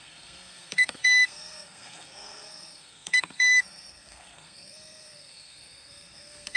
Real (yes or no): no